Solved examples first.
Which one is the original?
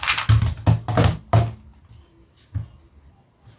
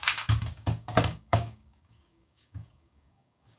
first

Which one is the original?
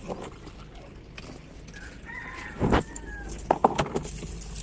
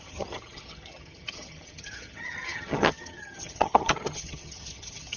first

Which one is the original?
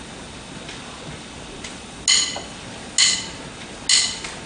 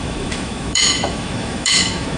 first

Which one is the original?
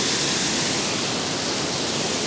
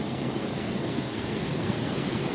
first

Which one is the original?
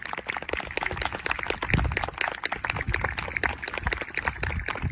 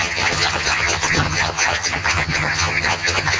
first